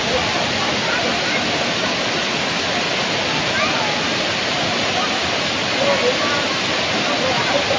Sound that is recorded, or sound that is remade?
recorded